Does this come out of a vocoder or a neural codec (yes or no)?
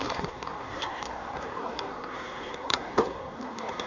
yes